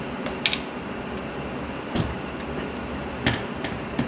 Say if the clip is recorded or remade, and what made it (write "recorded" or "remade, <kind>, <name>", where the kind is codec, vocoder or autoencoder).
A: recorded